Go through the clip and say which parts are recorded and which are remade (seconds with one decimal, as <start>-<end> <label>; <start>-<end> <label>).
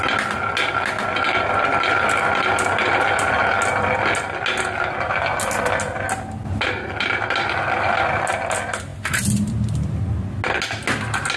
0.0-11.4 recorded